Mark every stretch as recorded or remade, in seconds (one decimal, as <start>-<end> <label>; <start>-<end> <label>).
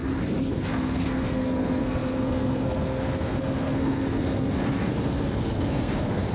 0.0-0.5 recorded; 0.5-6.3 remade